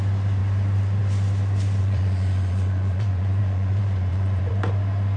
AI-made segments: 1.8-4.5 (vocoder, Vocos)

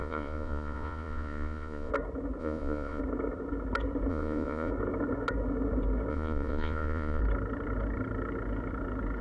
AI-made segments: 0.0-1.9 (vocoder, Vocos); 2.4-3.0; 4.1-4.7; 6.1-7.2

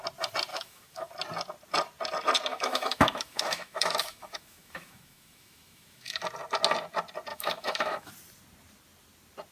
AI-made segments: 0.5-1.1 (autoencoder, DAC-VAE); 2.5-6.2; 7.3-8.1

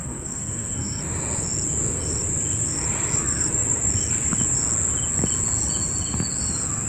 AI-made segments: 0.0-1.0 (codec, SNAC)

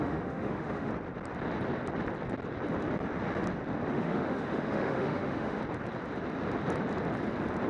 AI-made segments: 0.0-0.9 (autoencoder, DAC-VAE); 3.9-5.6

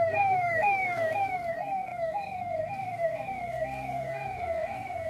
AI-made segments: 0.0-5.1 (codec, SNAC)